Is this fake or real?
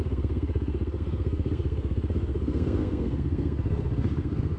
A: fake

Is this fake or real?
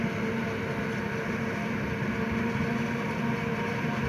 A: real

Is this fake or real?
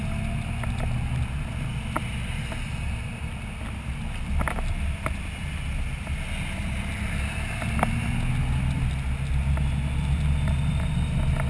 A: real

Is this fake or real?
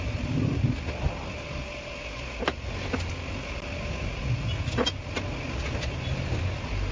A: real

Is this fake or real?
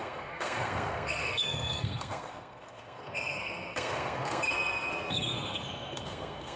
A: fake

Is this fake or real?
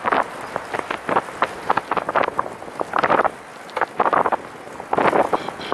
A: real